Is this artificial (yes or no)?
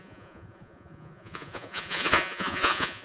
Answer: yes